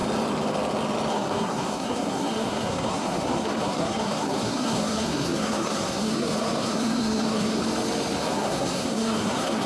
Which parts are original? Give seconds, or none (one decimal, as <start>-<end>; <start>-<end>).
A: 0.0-1.1; 7.6-8.2